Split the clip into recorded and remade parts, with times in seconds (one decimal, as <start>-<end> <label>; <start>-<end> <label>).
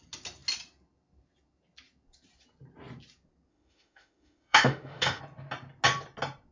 0.0-3.5 recorded; 3.5-5.2 remade; 5.2-6.5 recorded